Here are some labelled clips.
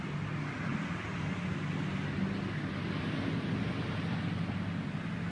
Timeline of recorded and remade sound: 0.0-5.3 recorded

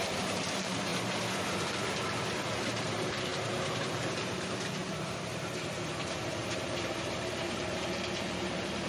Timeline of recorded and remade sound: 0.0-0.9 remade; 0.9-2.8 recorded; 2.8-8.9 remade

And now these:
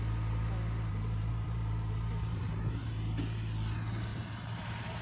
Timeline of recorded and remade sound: 0.0-0.9 recorded; 0.9-2.4 remade; 2.4-4.1 recorded; 4.1-5.0 remade

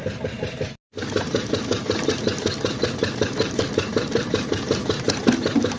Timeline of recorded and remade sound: 0.0-3.0 recorded; 3.0-4.5 remade; 4.5-5.8 recorded

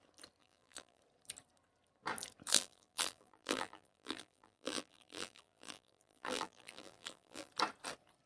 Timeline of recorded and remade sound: 0.0-0.4 recorded; 0.4-1.0 remade; 1.0-2.5 recorded; 2.5-7.5 remade; 7.5-8.3 recorded

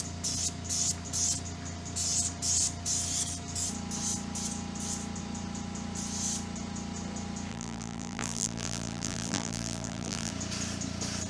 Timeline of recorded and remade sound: 0.0-7.5 recorded; 7.5-10.3 remade; 10.3-11.3 recorded